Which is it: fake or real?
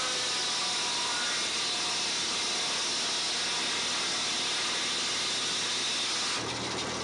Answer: real